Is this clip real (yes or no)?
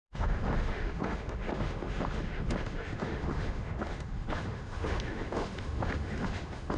no